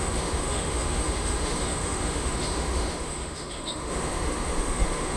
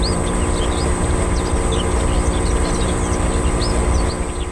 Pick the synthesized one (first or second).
first